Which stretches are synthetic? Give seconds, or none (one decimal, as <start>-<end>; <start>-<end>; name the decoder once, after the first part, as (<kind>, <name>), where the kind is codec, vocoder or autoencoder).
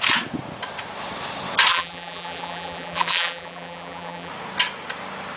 1.7-4.3 (vocoder, BigVGAN v2)